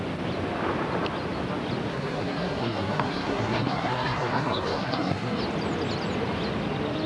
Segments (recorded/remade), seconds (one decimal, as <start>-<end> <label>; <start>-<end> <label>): 0.0-1.9 recorded; 1.9-5.4 remade; 5.4-7.1 recorded